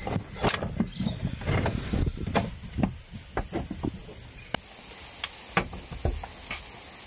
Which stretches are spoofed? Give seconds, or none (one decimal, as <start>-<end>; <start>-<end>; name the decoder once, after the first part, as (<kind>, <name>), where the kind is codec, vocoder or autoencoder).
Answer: none